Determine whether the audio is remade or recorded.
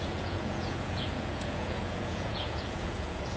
remade